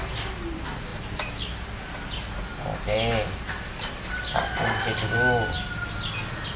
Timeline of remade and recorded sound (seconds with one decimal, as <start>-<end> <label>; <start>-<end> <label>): 0.0-6.6 recorded